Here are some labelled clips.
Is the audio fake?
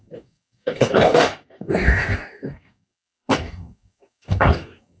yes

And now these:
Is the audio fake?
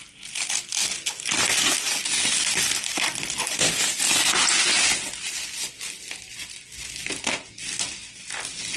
no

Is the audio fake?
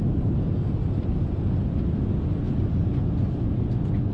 no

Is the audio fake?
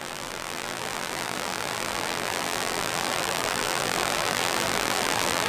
yes